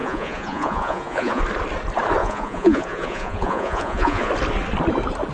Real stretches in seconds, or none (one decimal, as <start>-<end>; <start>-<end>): 1.4-2.2; 4.3-5.3